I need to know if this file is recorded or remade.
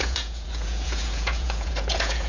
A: remade